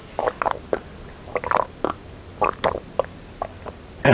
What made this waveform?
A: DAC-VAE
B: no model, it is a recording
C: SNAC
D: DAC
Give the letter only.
B